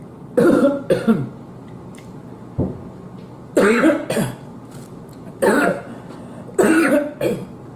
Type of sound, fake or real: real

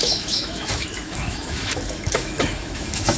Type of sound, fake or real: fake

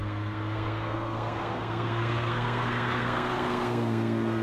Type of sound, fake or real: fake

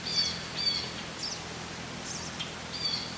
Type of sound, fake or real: real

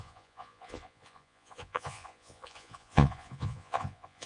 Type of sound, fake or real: fake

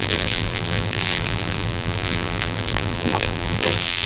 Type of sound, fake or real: fake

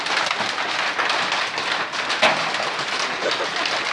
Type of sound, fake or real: real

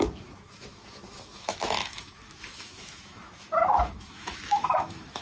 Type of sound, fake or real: fake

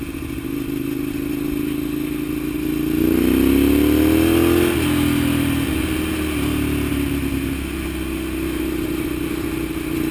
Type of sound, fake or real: real